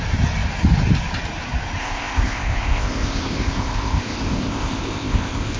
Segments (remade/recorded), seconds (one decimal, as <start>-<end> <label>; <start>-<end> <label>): 0.0-1.8 recorded; 1.8-5.6 remade